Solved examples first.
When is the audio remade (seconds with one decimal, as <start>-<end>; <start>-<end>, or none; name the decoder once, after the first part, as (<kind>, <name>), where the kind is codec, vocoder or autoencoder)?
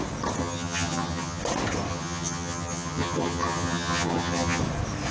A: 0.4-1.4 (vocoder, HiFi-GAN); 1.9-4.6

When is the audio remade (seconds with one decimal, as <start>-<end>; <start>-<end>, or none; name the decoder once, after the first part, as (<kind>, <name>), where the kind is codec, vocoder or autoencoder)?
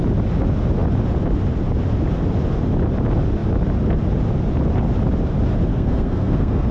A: 5.7-6.7 (codec, SNAC)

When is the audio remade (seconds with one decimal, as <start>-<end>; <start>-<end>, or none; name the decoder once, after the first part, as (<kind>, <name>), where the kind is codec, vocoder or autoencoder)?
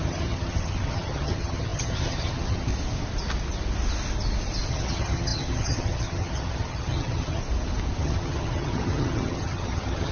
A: 0.0-2.7 (vocoder, HiFi-GAN); 4.7-7.4; 8.0-10.1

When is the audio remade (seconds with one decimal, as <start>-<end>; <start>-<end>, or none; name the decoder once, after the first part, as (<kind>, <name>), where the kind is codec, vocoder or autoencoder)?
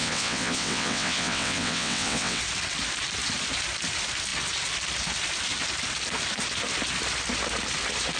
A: 0.0-2.4 (vocoder, WaveNeXt)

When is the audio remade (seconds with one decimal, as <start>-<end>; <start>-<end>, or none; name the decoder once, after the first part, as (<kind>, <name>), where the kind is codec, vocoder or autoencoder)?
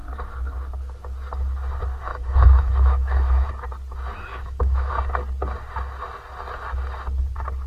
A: 2.1-3.5 (autoencoder, DAC-VAE); 4.3-4.9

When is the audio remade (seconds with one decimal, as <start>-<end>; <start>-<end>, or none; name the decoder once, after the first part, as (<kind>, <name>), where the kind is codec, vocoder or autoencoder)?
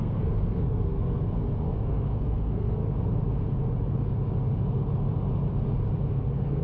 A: 0.0-2.8 (codec, SNAC); 6.1-6.6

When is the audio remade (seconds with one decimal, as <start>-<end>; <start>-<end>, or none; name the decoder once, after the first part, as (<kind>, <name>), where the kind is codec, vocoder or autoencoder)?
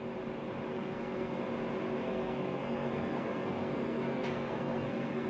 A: 0.7-1.4 (codec, SNAC); 2.0-5.3